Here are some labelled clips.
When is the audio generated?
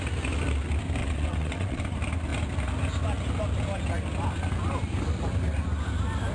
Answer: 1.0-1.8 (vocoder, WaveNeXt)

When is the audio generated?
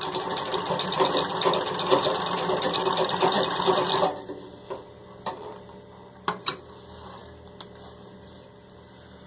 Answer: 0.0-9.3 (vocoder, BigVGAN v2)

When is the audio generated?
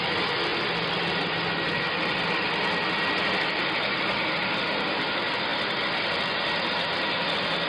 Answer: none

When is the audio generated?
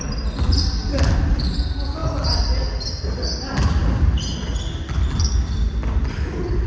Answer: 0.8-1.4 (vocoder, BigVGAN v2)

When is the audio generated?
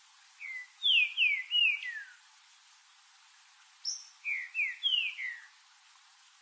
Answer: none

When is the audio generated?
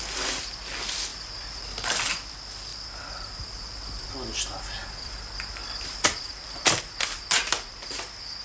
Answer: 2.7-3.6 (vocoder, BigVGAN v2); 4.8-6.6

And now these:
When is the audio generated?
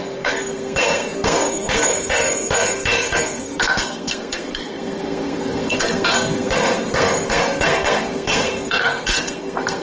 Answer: 0.0-9.8 (codec, SNAC)